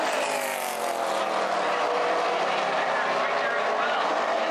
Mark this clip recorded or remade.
recorded